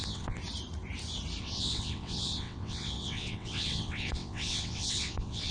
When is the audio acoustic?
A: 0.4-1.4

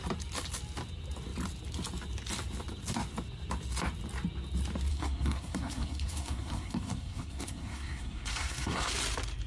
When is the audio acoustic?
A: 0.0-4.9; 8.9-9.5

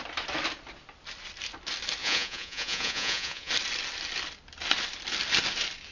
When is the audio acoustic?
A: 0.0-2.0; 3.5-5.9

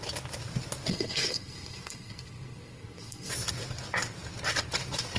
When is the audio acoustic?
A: 0.0-0.9; 3.3-5.2

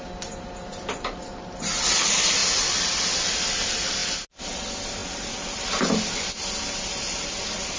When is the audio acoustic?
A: 0.0-7.8